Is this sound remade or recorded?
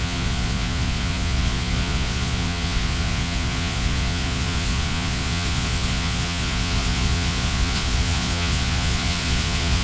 remade